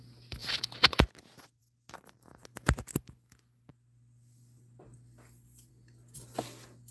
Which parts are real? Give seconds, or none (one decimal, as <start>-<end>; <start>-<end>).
0.0-0.4; 1.1-6.9